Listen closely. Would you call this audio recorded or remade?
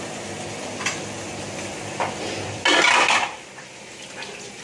recorded